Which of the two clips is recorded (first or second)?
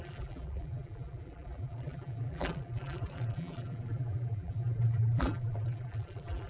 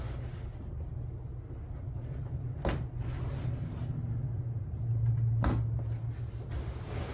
second